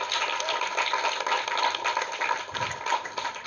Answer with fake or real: real